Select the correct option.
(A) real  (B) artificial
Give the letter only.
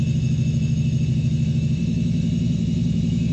B